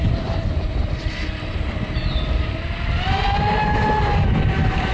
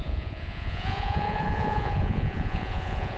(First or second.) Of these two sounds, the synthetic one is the second